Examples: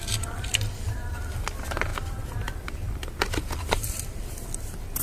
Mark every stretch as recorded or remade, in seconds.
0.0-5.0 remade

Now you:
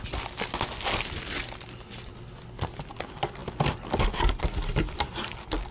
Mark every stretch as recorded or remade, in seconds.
0.0-5.7 recorded

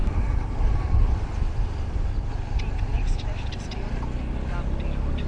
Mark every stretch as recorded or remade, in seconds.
0.0-2.3 remade; 2.3-2.9 recorded; 2.9-3.8 remade; 3.8-5.3 recorded

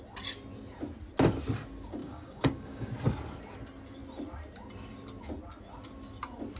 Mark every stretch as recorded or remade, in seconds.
0.0-2.0 recorded; 2.0-2.9 remade; 2.9-6.6 recorded